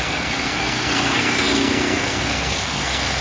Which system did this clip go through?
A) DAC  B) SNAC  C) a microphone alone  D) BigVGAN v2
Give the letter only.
B